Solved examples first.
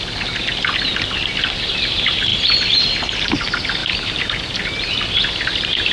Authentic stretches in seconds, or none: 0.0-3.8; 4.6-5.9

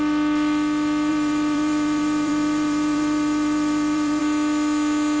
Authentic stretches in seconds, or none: 0.0-1.1; 4.2-5.2

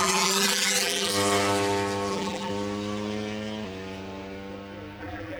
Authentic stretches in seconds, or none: 1.1-2.1; 2.5-5.0